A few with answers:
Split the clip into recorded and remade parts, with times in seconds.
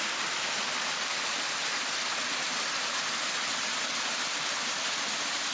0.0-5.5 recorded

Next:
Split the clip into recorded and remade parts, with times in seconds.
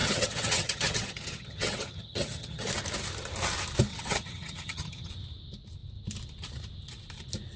0.0-2.7 remade; 2.7-3.9 recorded; 3.9-5.1 remade; 5.1-7.6 recorded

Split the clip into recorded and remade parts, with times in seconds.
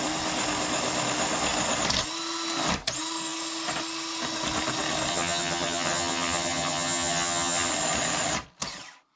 0.0-5.1 recorded; 5.1-7.7 remade; 7.7-9.2 recorded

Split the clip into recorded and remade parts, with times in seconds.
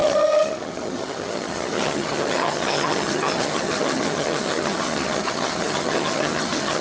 0.0-6.8 remade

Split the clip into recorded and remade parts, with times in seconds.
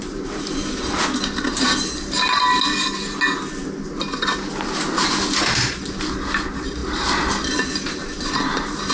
0.0-8.9 recorded